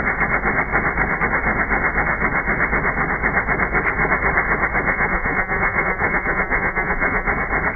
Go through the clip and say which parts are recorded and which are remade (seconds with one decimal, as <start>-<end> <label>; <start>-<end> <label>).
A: 0.0-4.9 recorded; 4.9-7.3 remade; 7.3-7.8 recorded